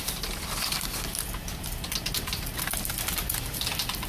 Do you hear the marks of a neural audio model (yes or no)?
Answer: no